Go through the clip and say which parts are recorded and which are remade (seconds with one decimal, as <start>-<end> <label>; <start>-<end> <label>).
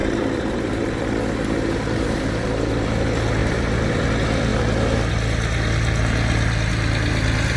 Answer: 0.0-1.0 remade; 1.0-3.4 recorded; 3.4-4.0 remade; 4.0-7.6 recorded